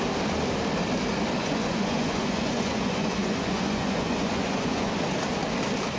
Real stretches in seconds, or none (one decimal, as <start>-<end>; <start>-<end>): 0.0-1.4; 4.9-6.0